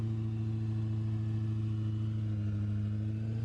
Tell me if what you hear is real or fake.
real